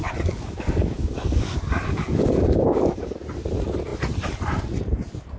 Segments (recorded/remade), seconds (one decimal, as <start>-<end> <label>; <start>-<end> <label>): 0.0-3.2 remade; 3.2-5.4 recorded